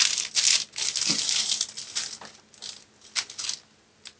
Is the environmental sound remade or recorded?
recorded